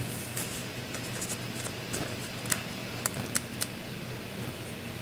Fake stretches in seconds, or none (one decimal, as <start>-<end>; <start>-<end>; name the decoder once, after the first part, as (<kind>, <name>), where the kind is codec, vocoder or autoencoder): none